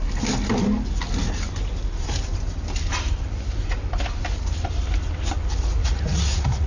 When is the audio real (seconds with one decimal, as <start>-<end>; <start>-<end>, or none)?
0.0-5.8